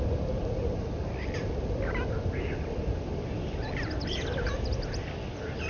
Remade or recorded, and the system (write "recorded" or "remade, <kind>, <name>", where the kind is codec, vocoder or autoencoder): recorded